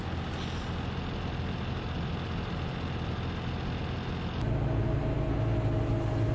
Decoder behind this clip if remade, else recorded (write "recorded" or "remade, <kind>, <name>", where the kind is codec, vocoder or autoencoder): recorded